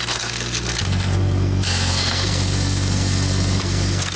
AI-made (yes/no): yes